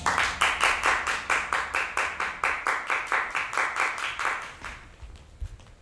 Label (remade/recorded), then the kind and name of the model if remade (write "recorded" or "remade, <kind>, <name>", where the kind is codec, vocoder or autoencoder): recorded